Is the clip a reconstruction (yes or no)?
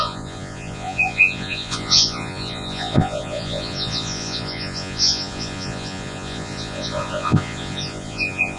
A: yes